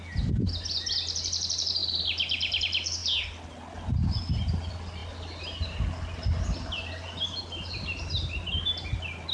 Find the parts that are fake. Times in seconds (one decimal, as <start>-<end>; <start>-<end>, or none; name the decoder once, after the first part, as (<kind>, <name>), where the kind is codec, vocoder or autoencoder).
none